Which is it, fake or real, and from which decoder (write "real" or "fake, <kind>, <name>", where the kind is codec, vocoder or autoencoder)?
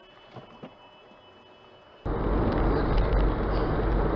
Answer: real